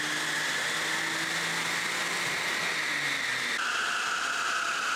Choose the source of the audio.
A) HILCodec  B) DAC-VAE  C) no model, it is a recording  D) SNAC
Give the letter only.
C